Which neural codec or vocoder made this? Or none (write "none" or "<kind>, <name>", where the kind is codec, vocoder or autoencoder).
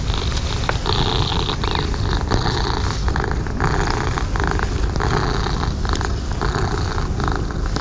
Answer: none